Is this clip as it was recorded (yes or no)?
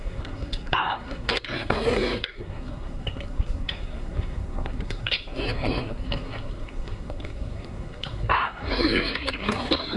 no